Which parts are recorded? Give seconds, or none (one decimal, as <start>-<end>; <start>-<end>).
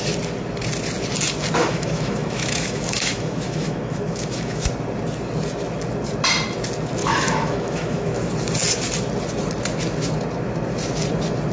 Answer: 0.0-1.6; 4.7-7.0; 8.3-11.5